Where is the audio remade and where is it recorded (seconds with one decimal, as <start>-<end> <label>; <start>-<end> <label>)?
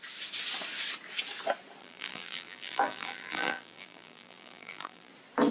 0.0-1.8 recorded; 1.8-5.1 remade; 5.1-5.5 recorded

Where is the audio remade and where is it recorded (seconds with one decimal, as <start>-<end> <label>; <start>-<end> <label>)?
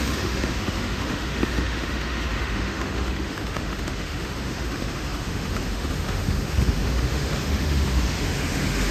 0.0-8.9 remade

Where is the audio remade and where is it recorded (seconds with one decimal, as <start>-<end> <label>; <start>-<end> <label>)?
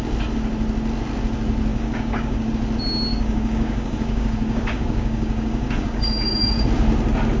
0.0-1.7 recorded; 1.7-2.5 remade; 2.5-3.1 recorded; 3.1-6.6 remade; 6.6-7.4 recorded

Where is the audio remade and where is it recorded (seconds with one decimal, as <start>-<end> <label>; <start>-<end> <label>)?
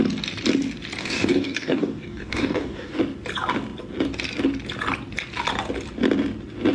0.0-1.0 recorded; 1.0-3.0 remade; 3.0-6.7 recorded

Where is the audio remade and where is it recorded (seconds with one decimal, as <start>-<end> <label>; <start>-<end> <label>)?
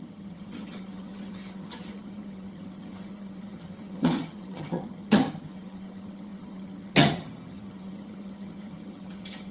0.0-9.5 remade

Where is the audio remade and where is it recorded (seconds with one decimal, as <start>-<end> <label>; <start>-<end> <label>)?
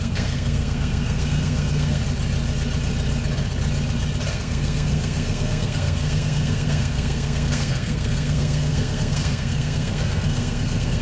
0.0-2.0 remade; 2.0-4.3 recorded; 4.3-11.0 remade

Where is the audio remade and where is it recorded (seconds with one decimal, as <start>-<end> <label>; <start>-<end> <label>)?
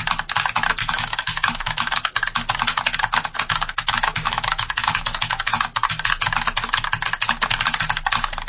0.0-0.8 recorded; 0.8-2.1 remade; 2.1-3.7 recorded; 3.7-5.6 remade; 5.6-8.5 recorded